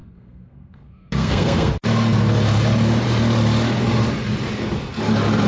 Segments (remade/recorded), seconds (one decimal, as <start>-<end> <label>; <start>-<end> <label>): 0.0-1.7 remade; 1.7-5.5 recorded